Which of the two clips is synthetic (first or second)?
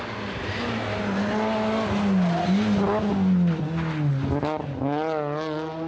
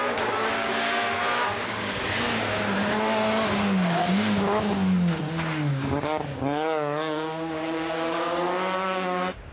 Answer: second